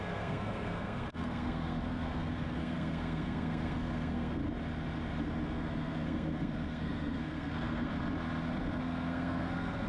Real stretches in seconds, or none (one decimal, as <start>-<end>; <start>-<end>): 4.4-5.2; 7.9-8.8